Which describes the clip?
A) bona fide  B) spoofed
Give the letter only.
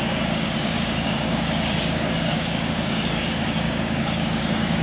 B